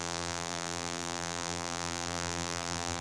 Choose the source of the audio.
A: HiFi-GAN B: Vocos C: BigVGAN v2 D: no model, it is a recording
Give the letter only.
C